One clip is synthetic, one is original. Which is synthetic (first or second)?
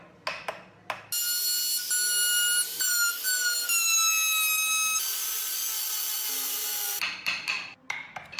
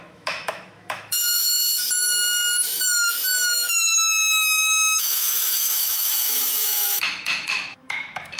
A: second